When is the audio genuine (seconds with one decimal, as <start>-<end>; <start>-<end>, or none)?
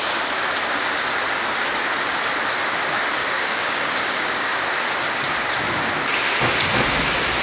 0.0-3.2; 4.6-7.4